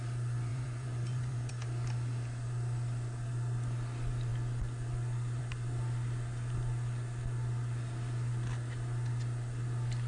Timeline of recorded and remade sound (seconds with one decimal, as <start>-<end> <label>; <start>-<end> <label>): 0.0-0.5 recorded; 0.5-1.5 remade; 1.5-10.1 recorded